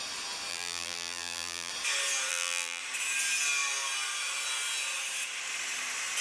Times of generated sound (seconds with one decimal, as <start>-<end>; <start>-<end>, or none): 0.5-1.7; 2.3-2.8